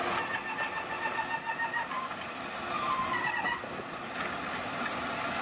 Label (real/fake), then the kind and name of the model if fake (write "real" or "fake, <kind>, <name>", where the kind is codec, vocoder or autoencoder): real